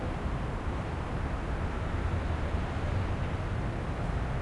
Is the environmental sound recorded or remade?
remade